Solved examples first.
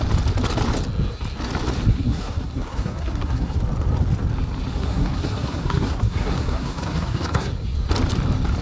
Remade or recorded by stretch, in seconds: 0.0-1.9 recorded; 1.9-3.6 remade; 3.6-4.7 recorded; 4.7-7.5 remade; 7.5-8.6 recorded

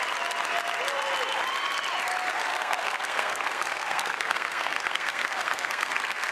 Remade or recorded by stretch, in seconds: 0.0-2.5 recorded; 2.5-6.3 remade